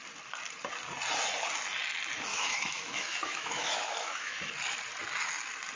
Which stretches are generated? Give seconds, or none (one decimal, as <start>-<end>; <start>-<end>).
2.3-4.5